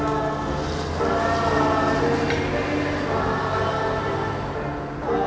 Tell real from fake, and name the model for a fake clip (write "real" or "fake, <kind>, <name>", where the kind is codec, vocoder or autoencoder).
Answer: real